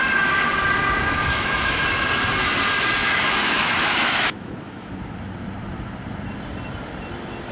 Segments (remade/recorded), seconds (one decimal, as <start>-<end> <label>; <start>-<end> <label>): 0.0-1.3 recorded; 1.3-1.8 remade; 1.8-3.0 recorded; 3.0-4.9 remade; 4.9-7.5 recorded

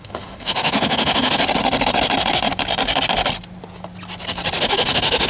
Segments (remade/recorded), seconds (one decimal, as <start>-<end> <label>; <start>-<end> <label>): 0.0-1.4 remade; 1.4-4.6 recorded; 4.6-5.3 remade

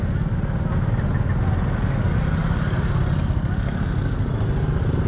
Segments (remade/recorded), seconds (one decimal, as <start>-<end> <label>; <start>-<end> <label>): 0.0-5.1 recorded

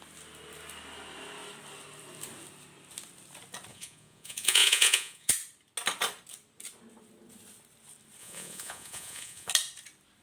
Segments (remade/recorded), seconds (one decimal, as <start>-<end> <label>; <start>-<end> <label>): 0.0-3.7 recorded; 3.7-5.3 remade; 5.3-8.2 recorded; 8.2-9.5 remade; 9.5-10.2 recorded